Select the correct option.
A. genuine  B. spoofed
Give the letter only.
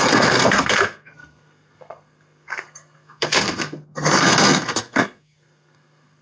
B